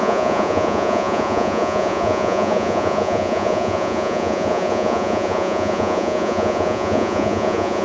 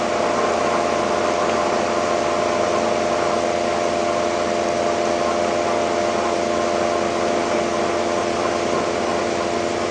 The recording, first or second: second